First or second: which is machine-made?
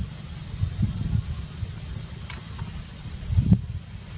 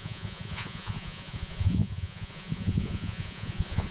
second